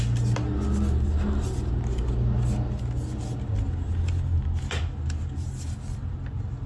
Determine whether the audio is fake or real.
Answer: real